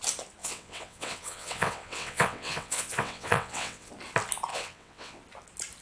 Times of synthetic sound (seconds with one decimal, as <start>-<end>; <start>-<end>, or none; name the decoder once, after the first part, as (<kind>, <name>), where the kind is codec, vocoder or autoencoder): 0.4-3.9 (vocoder, WaveNeXt); 4.5-5.2